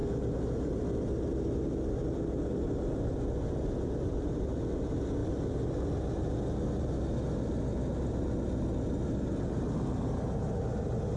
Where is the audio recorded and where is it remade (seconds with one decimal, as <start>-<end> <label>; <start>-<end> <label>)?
0.0-11.2 recorded